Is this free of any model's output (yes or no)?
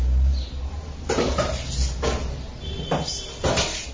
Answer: yes